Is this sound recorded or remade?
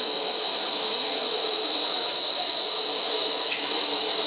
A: remade